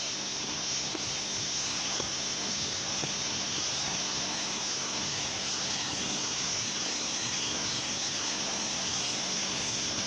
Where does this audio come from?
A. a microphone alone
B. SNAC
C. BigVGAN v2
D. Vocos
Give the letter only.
B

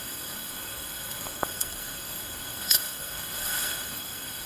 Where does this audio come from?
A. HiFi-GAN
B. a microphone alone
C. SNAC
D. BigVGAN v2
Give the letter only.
C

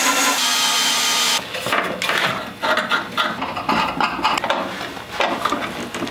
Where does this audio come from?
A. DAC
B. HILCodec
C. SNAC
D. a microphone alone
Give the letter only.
D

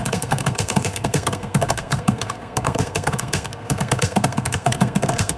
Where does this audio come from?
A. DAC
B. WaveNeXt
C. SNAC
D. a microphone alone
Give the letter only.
C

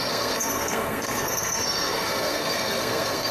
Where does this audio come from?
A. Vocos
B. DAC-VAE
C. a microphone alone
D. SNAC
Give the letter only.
D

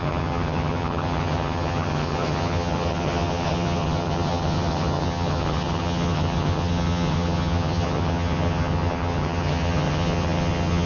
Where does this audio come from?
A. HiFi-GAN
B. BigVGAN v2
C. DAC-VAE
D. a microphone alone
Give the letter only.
A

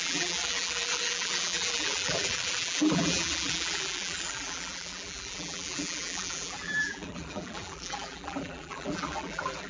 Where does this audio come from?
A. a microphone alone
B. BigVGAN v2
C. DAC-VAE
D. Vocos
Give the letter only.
B